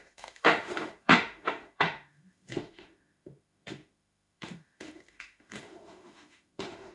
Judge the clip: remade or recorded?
remade